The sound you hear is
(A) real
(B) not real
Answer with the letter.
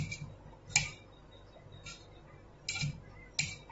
A